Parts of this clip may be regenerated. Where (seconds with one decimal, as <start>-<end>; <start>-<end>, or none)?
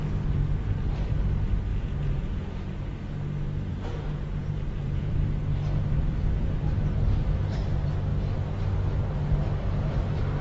1.7-2.9; 3.7-5.1